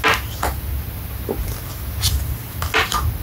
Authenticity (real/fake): real